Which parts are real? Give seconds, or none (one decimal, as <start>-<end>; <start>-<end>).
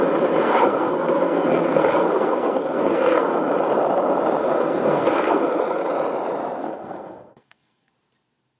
0.0-0.4; 3.4-4.4; 5.9-6.6; 7.9-8.6